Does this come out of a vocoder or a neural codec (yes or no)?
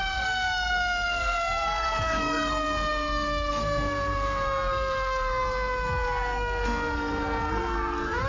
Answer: yes